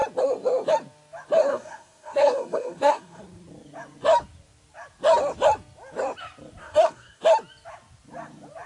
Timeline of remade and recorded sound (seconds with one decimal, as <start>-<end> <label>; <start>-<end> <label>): 0.0-1.5 recorded; 1.5-3.2 remade; 3.2-6.6 recorded; 6.6-7.2 remade; 7.2-8.7 recorded